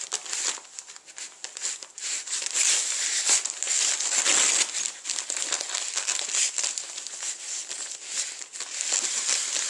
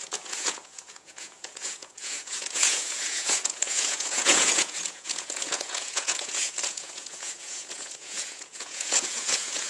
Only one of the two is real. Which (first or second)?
first